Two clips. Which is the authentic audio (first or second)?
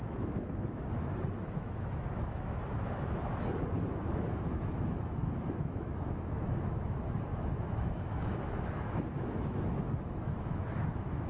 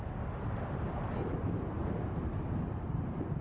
second